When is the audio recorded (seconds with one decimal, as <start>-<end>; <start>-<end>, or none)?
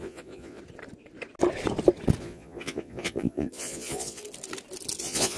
0.6-2.2; 4.2-5.0